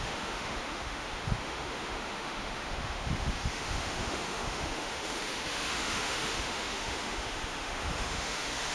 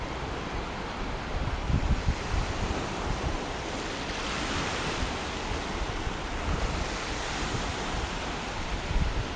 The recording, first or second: second